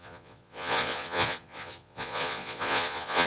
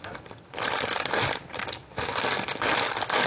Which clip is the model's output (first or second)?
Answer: first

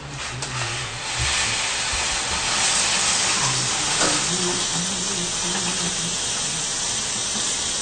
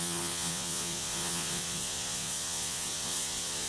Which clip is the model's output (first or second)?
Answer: second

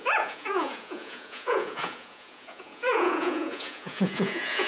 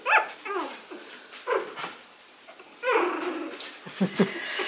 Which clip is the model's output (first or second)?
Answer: first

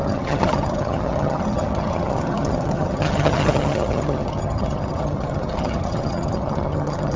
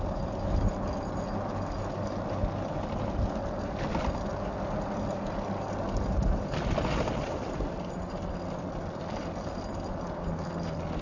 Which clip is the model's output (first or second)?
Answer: first